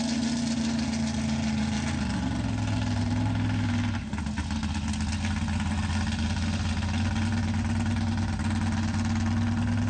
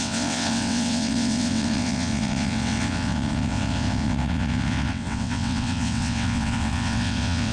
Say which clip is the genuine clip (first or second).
first